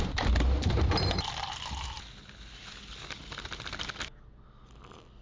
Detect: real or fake real